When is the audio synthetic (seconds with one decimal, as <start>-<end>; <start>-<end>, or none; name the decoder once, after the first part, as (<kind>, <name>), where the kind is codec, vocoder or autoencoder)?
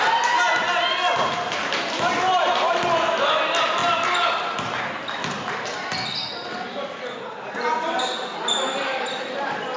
1.6-2.8 (vocoder, BigVGAN v2)